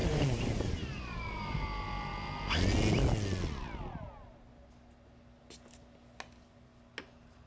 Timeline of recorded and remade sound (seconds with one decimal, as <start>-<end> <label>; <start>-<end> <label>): 0.0-1.6 remade; 1.6-7.5 recorded